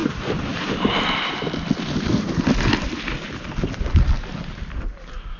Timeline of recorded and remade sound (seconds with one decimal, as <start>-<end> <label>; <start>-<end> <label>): 0.0-5.4 recorded

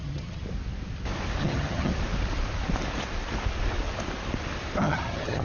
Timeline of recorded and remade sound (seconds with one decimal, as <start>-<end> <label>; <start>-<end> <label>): 0.0-0.4 remade; 0.4-1.4 recorded; 1.4-1.9 remade; 1.9-4.8 recorded; 4.8-5.4 remade

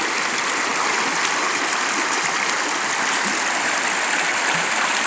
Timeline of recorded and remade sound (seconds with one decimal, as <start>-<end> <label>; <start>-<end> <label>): 0.0-5.1 recorded

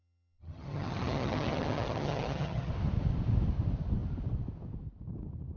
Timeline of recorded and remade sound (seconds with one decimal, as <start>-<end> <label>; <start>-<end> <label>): 0.0-2.7 remade; 2.7-5.6 recorded